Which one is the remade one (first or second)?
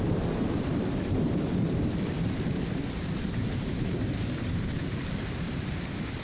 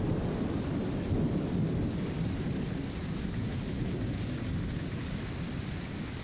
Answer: first